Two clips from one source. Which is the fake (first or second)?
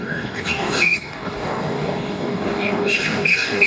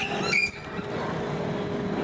first